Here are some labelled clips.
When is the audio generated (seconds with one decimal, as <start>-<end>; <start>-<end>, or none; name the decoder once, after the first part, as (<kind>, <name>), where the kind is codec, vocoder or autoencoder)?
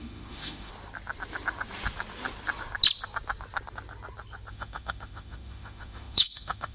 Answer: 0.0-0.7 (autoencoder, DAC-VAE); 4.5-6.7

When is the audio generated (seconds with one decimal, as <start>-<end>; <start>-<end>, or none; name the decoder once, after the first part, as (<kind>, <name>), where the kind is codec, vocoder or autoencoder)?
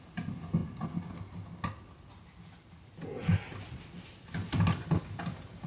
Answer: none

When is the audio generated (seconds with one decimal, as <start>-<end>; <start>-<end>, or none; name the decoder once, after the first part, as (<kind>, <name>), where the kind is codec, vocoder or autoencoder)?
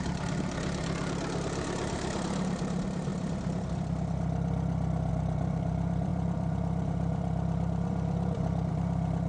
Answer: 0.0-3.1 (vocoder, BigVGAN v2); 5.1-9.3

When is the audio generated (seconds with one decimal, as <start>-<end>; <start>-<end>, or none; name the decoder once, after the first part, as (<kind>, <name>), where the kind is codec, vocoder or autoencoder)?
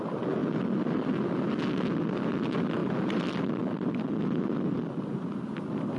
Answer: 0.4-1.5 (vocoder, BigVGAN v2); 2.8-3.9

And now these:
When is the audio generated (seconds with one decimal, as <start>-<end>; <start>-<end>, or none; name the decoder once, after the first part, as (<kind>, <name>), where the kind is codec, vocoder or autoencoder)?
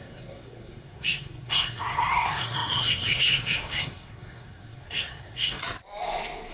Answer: 0.0-5.6 (codec, SNAC)